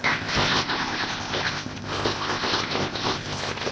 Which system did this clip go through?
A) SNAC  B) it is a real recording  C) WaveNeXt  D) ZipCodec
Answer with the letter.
D